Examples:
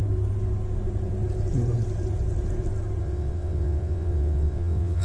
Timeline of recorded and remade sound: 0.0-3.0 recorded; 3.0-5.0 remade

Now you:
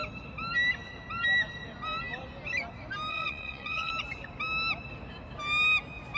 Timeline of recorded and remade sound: 0.0-3.1 recorded; 3.1-3.9 remade; 3.9-6.2 recorded

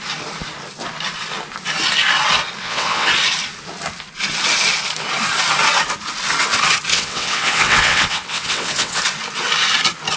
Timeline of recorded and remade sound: 0.0-2.6 recorded; 2.6-3.1 remade; 3.1-6.9 recorded; 6.9-9.0 remade; 9.0-10.2 recorded

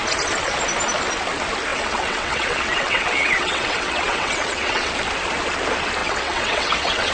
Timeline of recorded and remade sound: 0.0-1.7 recorded; 1.7-4.9 remade; 4.9-6.0 recorded; 6.0-7.1 remade

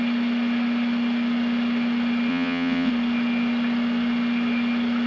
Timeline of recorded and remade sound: 0.0-2.3 recorded; 2.3-2.9 remade; 2.9-5.1 recorded

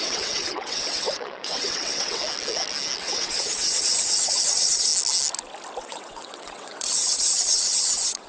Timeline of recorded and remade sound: 0.0-2.2 remade; 2.2-3.0 recorded; 3.0-4.9 remade; 4.9-5.8 recorded; 5.8-8.3 remade

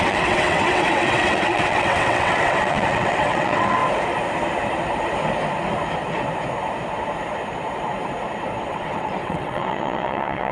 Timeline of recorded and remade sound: 0.0-3.8 remade; 3.8-8.6 recorded; 8.6-10.5 remade

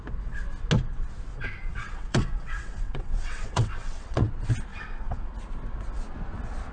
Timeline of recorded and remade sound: 0.0-1.3 recorded; 1.3-4.3 remade; 4.3-4.7 recorded; 4.7-5.3 remade; 5.3-6.7 recorded